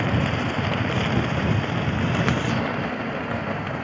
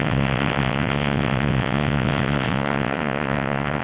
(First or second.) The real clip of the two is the first